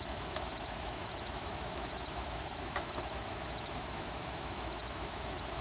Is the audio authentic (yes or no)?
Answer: no